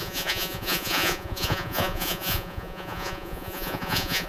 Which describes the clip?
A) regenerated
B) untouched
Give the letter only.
A